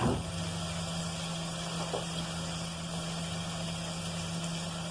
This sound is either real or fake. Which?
real